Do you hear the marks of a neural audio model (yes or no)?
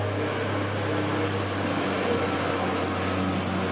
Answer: no